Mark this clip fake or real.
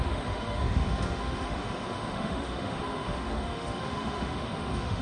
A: fake